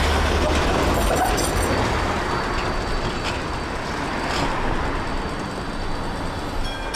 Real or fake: real